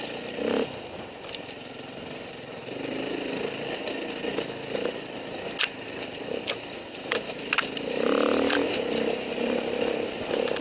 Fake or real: real